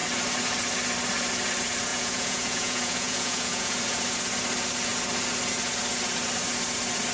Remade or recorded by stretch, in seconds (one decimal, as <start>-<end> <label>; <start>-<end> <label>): 0.0-1.9 recorded; 1.9-3.8 remade; 3.8-7.1 recorded